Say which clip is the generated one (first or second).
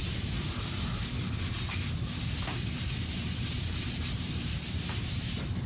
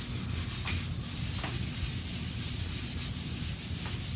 first